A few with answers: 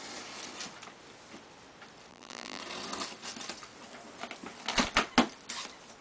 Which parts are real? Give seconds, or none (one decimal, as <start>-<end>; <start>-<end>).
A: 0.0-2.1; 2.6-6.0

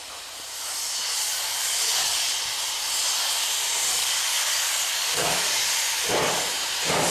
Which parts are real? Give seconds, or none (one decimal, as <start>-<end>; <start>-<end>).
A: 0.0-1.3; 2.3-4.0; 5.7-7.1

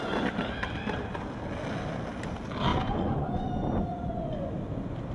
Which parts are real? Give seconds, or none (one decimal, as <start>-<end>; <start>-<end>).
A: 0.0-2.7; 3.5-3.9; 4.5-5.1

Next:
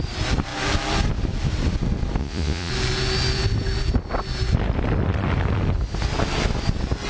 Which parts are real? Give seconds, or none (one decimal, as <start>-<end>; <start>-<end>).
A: 0.0-2.2; 2.7-7.1

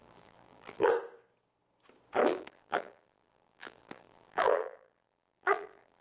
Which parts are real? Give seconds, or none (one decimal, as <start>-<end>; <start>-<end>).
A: 0.9-2.2